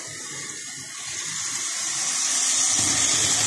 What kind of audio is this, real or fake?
real